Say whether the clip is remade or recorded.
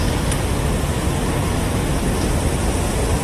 recorded